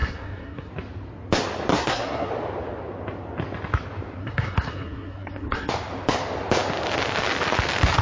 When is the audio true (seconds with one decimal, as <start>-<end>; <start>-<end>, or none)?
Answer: 0.7-1.7; 2.3-4.2; 5.7-8.0